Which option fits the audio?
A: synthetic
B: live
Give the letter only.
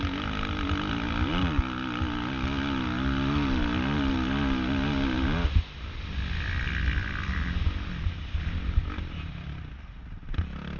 B